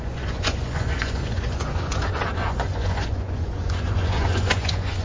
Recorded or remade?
remade